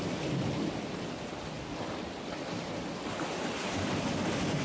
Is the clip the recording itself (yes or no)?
yes